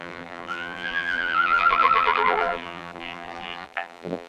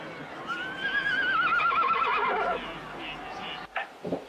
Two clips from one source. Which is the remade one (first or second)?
first